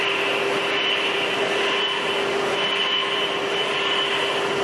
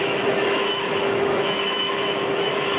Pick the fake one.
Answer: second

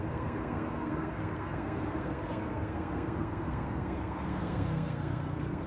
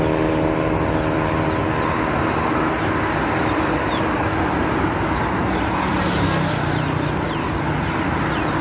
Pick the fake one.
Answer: first